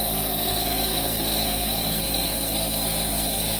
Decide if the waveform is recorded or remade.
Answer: remade